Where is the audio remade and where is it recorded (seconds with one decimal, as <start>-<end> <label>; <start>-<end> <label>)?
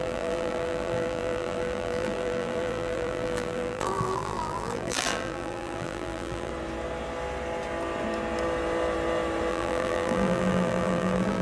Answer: 0.0-6.5 remade; 6.5-9.5 recorded; 9.5-11.4 remade